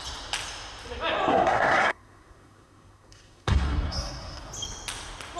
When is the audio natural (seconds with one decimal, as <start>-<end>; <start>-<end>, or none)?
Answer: 0.0-1.3; 4.5-5.4